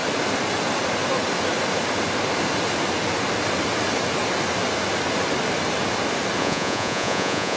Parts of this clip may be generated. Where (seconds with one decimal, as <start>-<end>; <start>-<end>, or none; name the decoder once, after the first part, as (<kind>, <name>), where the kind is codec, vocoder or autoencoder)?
6.4-7.6 (vocoder, Vocos)

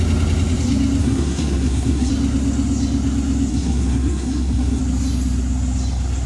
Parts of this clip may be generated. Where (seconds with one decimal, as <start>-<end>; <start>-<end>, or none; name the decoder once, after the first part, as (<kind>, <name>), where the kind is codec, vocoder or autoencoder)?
1.0-2.1 (codec, SNAC); 3.5-4.8

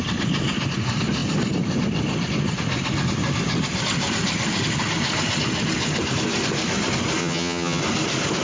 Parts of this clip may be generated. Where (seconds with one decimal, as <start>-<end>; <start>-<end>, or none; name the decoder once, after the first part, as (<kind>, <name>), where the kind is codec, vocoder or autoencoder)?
7.2-7.8 (vocoder, HiFi-GAN)

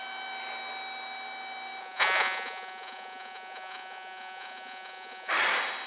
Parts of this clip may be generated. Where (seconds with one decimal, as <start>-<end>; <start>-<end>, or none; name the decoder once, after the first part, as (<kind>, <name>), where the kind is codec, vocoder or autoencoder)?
1.8-5.3 (vocoder, Vocos)

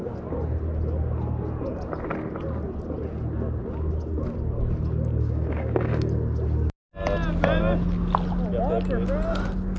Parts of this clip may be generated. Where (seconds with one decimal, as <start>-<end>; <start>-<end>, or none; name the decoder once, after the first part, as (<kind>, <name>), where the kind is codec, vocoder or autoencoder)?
5.1-6.1 (codec, DAC)

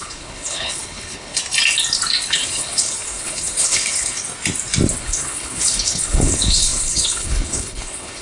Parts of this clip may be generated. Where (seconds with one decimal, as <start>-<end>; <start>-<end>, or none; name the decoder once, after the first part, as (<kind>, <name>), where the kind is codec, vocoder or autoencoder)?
0.0-1.4 (codec, HILCodec); 2.3-4.2; 5.0-8.2

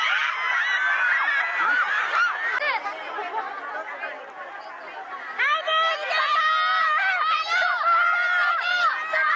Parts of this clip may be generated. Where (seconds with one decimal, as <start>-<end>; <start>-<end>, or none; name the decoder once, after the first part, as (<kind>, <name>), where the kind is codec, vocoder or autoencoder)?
none